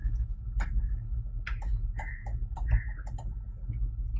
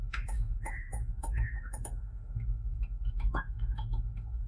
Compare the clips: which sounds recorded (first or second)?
first